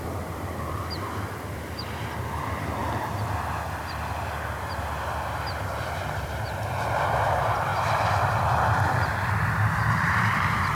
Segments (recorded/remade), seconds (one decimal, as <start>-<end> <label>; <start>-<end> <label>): 0.0-2.8 remade; 2.8-6.1 recorded; 6.1-10.7 remade